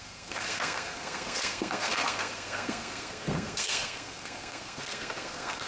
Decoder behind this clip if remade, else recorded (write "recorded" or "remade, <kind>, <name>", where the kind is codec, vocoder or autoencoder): remade, codec, SNAC